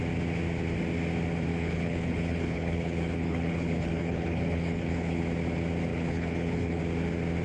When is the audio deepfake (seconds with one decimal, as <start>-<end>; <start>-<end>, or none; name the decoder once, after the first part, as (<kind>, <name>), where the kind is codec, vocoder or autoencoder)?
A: 1.5-5.2 (codec, HILCodec); 5.9-6.8